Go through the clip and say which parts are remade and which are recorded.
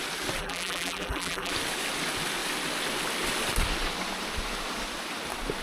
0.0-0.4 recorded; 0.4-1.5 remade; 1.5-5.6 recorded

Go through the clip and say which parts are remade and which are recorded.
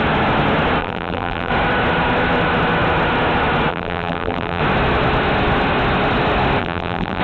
0.0-0.8 recorded; 0.8-1.5 remade; 1.5-3.7 recorded; 3.7-4.6 remade; 4.6-6.6 recorded; 6.6-7.2 remade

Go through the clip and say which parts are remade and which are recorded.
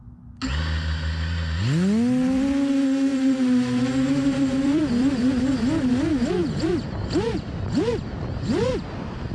0.0-3.1 recorded; 3.1-5.3 remade; 5.3-6.4 recorded; 6.4-7.6 remade; 7.6-9.3 recorded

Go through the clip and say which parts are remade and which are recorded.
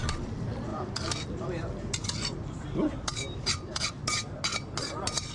0.0-0.7 recorded; 0.7-3.9 remade; 3.9-5.3 recorded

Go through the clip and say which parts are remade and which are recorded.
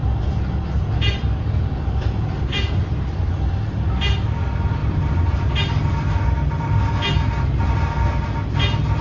0.0-3.3 remade; 3.3-4.8 recorded; 4.8-6.8 remade; 6.8-9.0 recorded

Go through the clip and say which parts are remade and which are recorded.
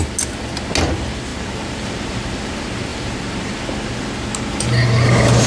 0.0-1.3 recorded; 1.3-2.5 remade; 2.5-2.9 recorded; 2.9-3.6 remade; 3.6-5.5 recorded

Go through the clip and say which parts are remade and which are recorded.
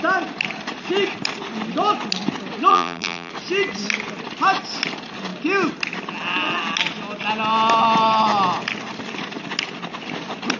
0.0-2.7 recorded; 2.7-3.3 remade; 3.3-10.6 recorded